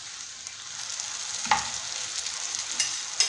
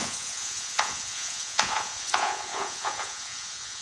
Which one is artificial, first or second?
second